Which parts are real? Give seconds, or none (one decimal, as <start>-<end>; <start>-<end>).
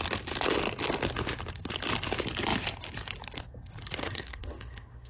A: 0.0-4.0